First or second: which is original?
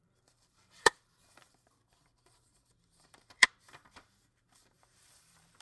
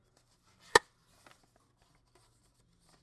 second